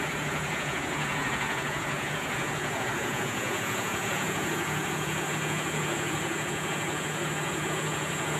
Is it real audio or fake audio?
fake